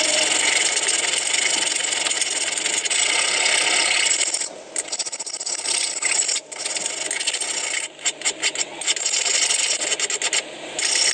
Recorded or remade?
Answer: recorded